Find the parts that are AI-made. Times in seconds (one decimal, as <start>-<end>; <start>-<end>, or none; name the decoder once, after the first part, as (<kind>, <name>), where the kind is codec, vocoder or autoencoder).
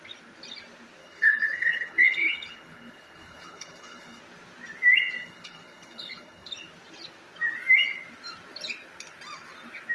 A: 1.0-4.2 (codec, HILCodec); 5.2-6.5